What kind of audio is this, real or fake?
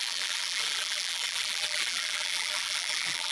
fake